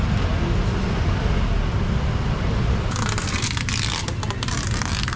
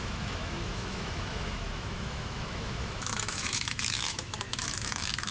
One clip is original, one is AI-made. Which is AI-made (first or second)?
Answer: second